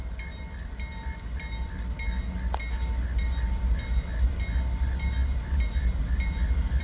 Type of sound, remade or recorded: recorded